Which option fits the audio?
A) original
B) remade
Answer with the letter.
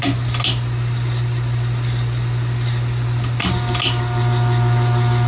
A